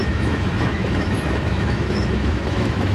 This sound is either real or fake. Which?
fake